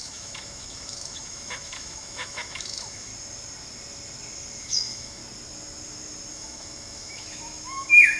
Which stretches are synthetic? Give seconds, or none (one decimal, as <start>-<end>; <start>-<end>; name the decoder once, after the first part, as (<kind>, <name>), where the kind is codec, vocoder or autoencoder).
0.0-3.1 (autoencoder, DAC-VAE); 4.6-5.2; 6.3-8.2